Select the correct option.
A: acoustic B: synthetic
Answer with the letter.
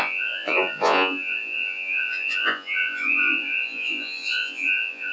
B